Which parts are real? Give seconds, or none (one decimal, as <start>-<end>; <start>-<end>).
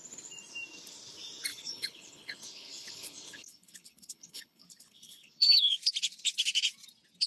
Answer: 0.0-1.5; 5.8-7.3